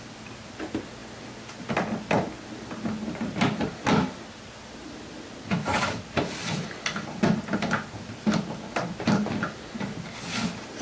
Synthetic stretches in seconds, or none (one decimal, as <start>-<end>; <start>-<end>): none